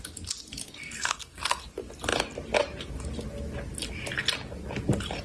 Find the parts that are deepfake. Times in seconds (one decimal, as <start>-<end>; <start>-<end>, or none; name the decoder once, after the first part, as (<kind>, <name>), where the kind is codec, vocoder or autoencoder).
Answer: 0.8-1.6 (codec, SNAC)